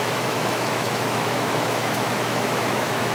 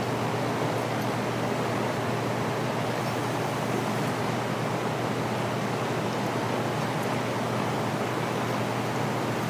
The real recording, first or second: second